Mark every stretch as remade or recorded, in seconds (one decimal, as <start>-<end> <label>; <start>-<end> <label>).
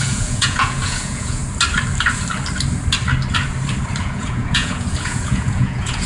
0.0-1.4 remade; 1.4-4.0 recorded; 4.0-6.1 remade